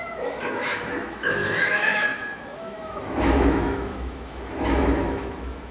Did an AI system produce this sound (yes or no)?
yes